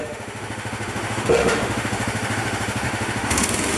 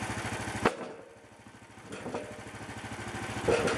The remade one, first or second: first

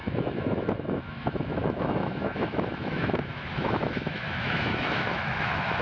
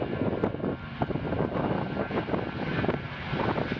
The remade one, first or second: first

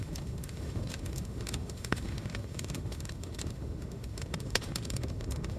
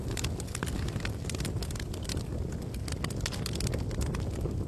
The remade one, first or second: first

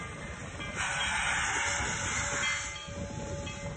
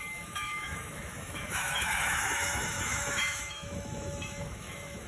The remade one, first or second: second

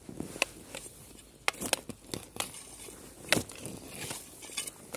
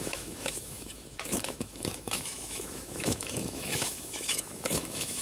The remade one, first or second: second